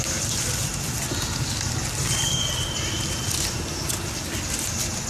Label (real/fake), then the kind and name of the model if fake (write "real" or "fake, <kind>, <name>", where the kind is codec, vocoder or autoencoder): real